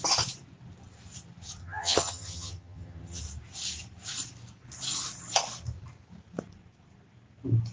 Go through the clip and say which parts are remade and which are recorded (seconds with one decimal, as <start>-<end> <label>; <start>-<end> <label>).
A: 0.0-1.6 recorded; 1.6-3.2 remade; 3.2-7.7 recorded

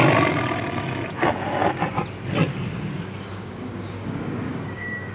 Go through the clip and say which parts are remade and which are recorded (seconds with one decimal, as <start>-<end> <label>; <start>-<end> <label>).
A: 0.0-2.7 recorded; 2.7-5.1 remade